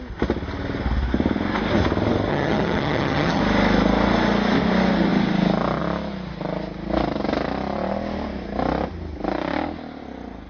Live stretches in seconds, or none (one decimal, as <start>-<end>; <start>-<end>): 0.0-2.3; 3.4-10.5